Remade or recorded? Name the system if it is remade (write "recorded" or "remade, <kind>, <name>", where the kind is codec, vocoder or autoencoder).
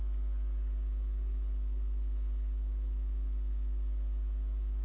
recorded